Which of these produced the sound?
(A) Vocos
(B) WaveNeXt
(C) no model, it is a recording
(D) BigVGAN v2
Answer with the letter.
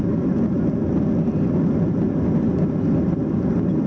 C